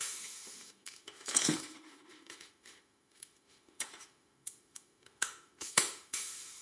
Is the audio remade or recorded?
remade